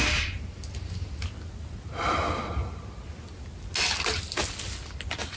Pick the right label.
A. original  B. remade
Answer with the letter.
A